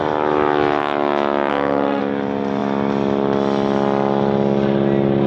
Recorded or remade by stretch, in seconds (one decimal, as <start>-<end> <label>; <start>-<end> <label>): 0.0-1.5 recorded; 1.5-2.0 remade; 2.0-5.3 recorded